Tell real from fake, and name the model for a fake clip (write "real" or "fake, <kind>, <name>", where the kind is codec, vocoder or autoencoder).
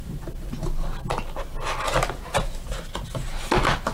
real